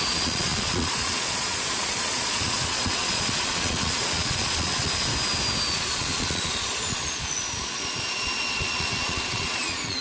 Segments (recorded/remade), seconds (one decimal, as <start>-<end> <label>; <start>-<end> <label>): 0.0-5.1 remade; 5.1-5.7 recorded; 5.7-10.0 remade